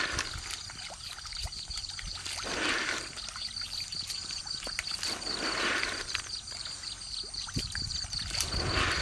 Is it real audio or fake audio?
real